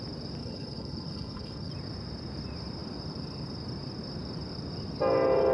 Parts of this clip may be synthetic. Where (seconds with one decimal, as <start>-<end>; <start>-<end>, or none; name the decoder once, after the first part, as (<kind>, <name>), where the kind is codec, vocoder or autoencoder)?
0.4-1.7 (codec, HILCodec)